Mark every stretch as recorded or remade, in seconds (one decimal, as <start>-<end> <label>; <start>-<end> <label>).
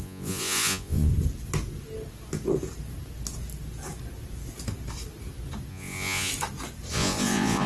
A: 0.0-1.1 remade; 1.1-5.7 recorded; 5.7-6.3 remade; 6.3-6.9 recorded; 6.9-7.7 remade